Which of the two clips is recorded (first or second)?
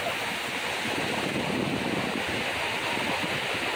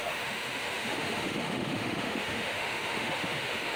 first